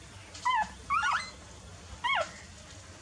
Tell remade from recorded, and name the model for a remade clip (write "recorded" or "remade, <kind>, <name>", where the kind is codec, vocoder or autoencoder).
recorded